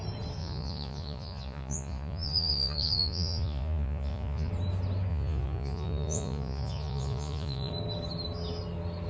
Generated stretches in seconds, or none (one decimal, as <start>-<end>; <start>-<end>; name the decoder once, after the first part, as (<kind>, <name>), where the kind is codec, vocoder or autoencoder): 0.4-4.5 (vocoder, Vocos); 5.1-7.7